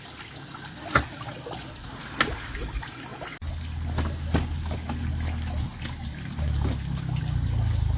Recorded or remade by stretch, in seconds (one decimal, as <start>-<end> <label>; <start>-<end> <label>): 0.0-8.0 recorded

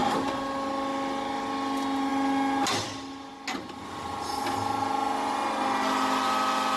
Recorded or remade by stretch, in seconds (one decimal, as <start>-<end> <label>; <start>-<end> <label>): 0.0-6.8 recorded

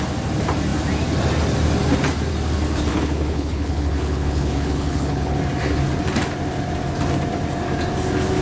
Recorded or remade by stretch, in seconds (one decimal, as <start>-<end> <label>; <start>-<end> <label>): 0.0-2.9 recorded; 2.9-5.4 remade; 5.4-8.4 recorded

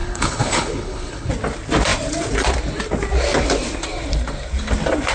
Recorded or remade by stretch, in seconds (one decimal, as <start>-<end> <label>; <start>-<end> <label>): 0.0-1.3 remade; 1.3-5.1 recorded

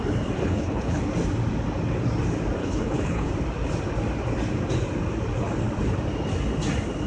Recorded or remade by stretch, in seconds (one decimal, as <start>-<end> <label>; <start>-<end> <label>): 0.0-0.4 recorded; 0.4-1.0 remade; 1.0-2.6 recorded; 2.6-3.3 remade; 3.3-7.1 recorded

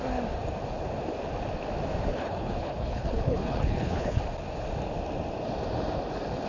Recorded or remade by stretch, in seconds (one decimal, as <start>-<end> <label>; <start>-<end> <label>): 0.0-2.1 recorded; 2.1-4.2 remade; 4.2-6.5 recorded

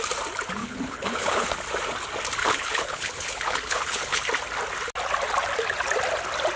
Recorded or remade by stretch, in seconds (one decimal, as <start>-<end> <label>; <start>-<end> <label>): 0.0-0.6 recorded; 0.6-1.5 remade; 1.5-2.4 recorded; 2.4-4.2 remade; 4.2-6.6 recorded